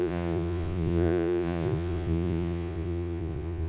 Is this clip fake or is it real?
fake